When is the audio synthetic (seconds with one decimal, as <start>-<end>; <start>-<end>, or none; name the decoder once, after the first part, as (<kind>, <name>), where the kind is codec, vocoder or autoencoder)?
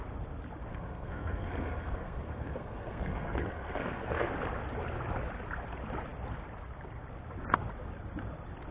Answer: 0.7-4.3 (codec, SNAC)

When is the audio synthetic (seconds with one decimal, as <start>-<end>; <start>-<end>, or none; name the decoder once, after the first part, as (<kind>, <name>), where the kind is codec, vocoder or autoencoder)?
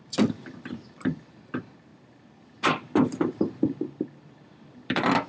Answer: 0.0-5.3 (vocoder, BigVGAN v2)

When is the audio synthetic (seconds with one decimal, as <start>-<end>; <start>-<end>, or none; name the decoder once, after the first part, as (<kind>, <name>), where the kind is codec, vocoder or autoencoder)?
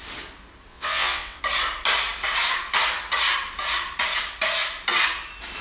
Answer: 0.7-1.4 (vocoder, WaveNeXt)